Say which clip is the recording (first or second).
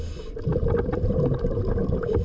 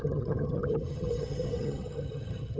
first